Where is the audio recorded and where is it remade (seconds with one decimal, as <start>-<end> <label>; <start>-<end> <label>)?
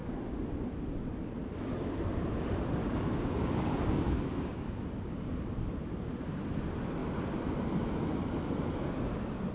0.0-2.8 recorded; 2.8-4.8 remade; 4.8-9.5 recorded